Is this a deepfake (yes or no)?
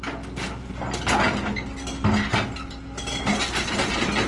no